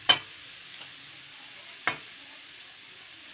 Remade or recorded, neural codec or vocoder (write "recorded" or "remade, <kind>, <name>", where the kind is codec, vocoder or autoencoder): recorded